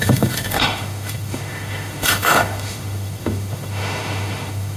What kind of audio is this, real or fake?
fake